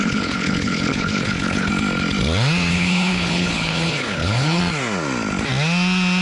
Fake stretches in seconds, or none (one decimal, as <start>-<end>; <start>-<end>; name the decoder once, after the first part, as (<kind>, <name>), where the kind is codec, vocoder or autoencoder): 0.0-1.7 (codec, HILCodec); 2.7-4.6